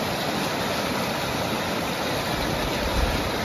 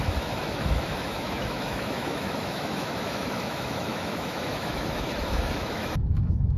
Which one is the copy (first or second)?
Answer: second